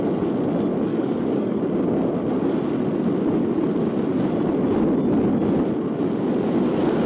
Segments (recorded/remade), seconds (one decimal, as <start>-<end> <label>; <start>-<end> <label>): 0.0-0.9 recorded; 0.9-1.6 remade; 1.6-7.1 recorded

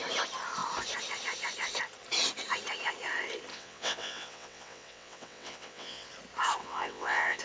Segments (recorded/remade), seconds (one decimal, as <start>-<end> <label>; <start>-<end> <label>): 0.0-3.5 recorded; 3.5-6.1 remade; 6.1-6.6 recorded; 6.6-7.4 remade